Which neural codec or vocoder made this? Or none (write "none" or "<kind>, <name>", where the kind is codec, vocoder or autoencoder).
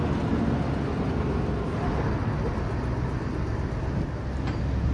none